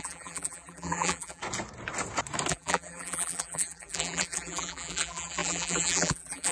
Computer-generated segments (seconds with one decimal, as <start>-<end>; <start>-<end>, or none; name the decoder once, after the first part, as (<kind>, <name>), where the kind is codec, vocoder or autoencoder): 0.0-1.4 (vocoder, BigVGAN v2); 2.5-6.5